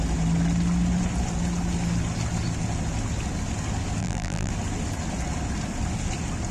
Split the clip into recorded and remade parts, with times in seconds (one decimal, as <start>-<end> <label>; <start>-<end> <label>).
0.0-4.0 recorded; 4.0-4.5 remade; 4.5-6.5 recorded